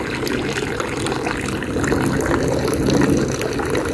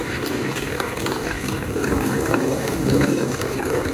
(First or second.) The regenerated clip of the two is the second